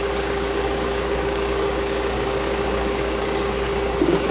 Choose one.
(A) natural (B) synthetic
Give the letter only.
B